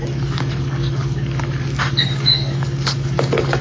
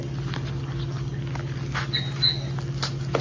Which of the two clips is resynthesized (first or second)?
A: first